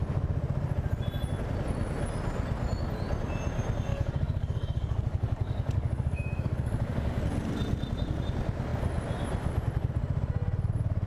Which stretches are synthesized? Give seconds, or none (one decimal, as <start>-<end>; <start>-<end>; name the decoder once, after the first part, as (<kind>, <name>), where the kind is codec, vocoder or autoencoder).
3.9-7.2 (codec, DAC)